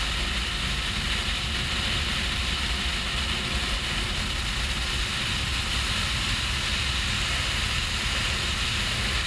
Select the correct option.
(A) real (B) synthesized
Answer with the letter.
A